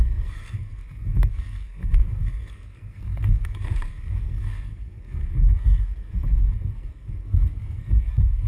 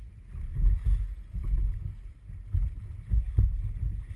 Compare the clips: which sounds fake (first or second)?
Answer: first